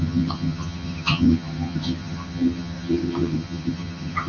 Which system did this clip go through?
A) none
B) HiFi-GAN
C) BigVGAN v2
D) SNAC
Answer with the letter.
B